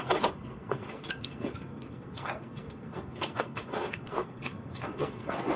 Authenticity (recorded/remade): remade